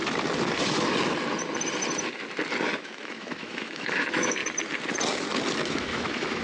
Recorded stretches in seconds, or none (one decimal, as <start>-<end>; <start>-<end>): 0.0-2.8; 4.4-5.7